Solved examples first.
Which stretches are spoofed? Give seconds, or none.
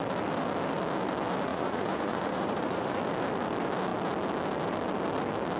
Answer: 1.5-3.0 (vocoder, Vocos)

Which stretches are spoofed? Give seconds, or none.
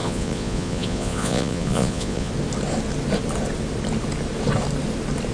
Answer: 0.0-2.3 (vocoder, Vocos)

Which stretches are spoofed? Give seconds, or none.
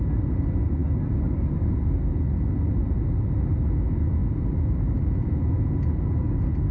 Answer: none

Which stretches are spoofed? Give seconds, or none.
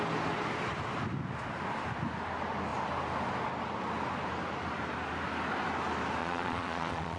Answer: 6.2-7.2 (vocoder, Vocos)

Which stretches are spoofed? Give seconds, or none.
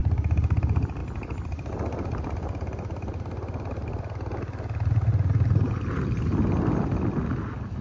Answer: none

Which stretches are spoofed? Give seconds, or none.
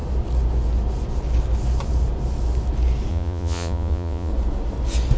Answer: 3.1-4.3 (vocoder, Vocos)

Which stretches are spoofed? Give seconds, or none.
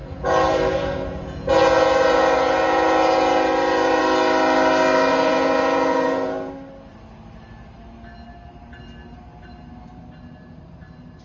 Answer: 0.0-4.0 (vocoder, Vocos); 5.1-6.5